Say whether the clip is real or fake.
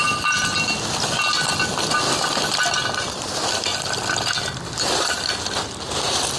real